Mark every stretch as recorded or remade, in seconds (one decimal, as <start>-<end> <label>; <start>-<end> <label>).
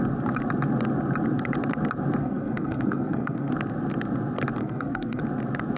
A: 0.0-2.2 recorded; 2.2-3.5 remade; 3.5-4.6 recorded; 4.6-5.2 remade; 5.2-5.8 recorded